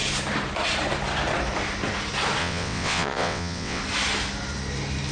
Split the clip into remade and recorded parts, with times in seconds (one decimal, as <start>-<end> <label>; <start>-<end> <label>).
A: 0.0-2.4 recorded; 2.4-3.8 remade; 3.8-5.1 recorded

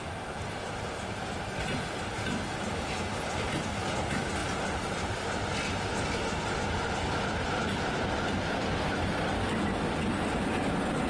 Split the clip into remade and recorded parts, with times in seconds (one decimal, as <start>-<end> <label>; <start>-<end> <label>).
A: 0.0-11.1 recorded